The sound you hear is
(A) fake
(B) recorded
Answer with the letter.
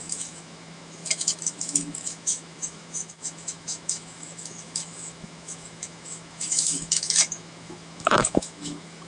A